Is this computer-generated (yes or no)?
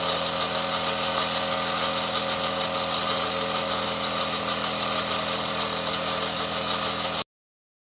no